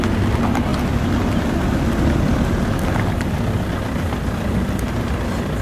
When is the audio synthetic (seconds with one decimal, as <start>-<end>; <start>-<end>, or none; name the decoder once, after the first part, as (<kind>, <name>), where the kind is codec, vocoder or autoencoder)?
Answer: none